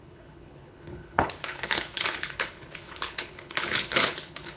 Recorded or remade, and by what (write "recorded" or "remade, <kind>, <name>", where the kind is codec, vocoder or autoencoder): remade, codec, HILCodec